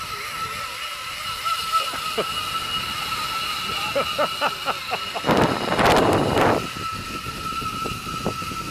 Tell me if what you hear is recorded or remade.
recorded